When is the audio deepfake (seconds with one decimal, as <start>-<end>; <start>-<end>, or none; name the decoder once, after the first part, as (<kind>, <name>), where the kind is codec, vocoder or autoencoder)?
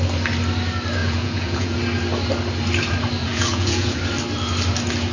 1.0-1.8 (vocoder, Vocos); 3.2-4.0